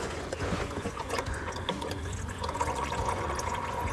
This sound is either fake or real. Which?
fake